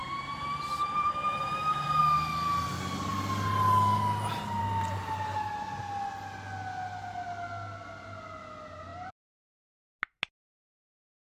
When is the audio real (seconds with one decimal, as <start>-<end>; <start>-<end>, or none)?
2.0-8.9; 9.5-11.3